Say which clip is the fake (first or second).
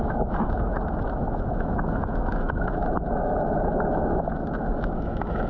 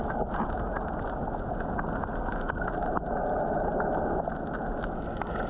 first